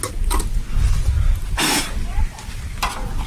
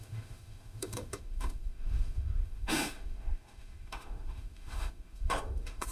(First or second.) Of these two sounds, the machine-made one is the second